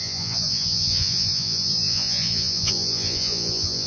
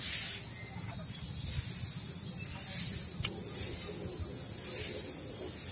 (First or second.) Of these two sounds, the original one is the second